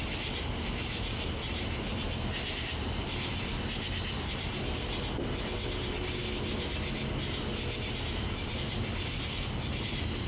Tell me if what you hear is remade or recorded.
recorded